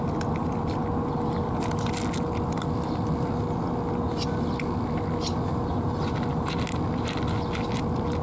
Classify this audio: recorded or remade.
recorded